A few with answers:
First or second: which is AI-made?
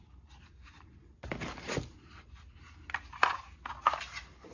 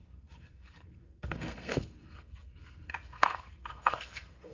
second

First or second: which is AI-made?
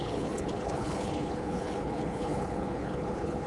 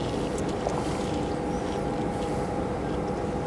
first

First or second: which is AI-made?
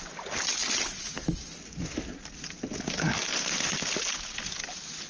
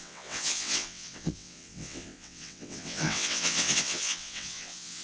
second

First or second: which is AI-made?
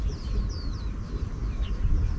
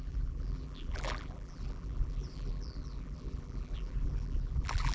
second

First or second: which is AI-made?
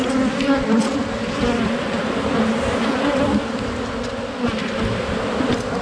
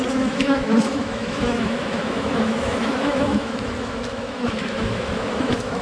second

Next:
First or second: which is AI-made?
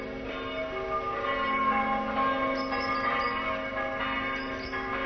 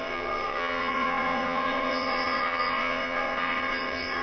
second